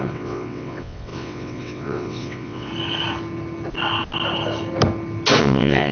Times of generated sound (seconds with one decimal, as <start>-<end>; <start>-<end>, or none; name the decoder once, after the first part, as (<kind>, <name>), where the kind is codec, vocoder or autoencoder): 0.0-2.7 (vocoder, WaveNeXt); 5.4-5.9